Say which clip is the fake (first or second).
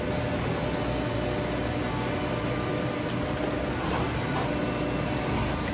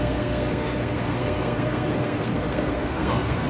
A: second